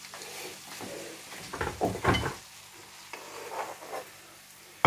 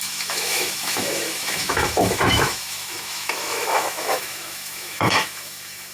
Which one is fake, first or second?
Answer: second